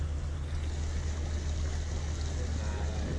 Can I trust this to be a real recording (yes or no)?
yes